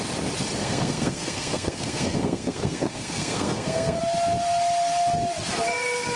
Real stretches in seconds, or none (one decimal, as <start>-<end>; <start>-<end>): 0.0-0.6; 4.0-6.2